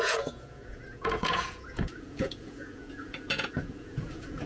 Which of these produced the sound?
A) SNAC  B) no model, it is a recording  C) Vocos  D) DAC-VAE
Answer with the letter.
C